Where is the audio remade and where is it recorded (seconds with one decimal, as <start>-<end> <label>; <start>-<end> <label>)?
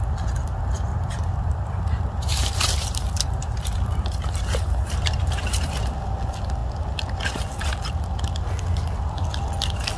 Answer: 0.0-0.9 recorded; 0.9-5.7 remade; 5.7-10.0 recorded